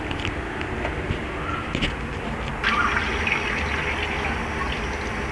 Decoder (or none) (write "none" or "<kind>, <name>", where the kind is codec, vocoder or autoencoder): none